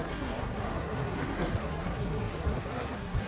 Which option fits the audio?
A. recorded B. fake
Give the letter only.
B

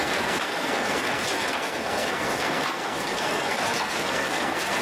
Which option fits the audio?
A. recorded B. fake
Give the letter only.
B